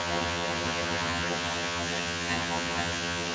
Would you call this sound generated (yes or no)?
yes